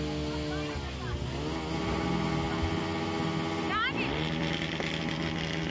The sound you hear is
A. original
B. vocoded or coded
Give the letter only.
A